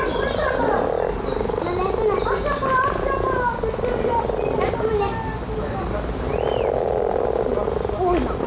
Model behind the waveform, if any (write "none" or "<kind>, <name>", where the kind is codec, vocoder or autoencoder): none